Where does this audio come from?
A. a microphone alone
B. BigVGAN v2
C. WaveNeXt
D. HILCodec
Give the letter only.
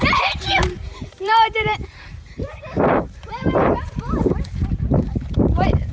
B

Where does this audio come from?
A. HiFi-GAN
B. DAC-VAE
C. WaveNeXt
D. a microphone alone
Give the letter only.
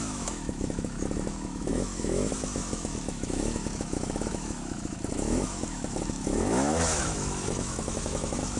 B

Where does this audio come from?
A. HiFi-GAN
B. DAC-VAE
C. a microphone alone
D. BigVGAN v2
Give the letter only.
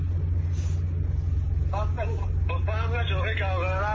C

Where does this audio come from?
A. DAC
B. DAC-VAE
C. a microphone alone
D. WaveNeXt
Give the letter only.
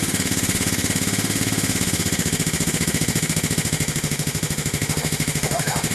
B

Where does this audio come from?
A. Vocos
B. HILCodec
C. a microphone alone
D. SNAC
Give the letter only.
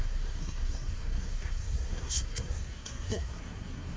D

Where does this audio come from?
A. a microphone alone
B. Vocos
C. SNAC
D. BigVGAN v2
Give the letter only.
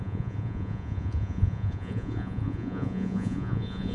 B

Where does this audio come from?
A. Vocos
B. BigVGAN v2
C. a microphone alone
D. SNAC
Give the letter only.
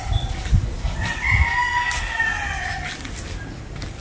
C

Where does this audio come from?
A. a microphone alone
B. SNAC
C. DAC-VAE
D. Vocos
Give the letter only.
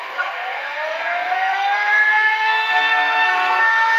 B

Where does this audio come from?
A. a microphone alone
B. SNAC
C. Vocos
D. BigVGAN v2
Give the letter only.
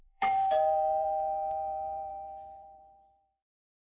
D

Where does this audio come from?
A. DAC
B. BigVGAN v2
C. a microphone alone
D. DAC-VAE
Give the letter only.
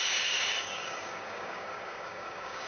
A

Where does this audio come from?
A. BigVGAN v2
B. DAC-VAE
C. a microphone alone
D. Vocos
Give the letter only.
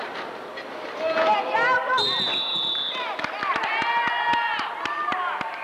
C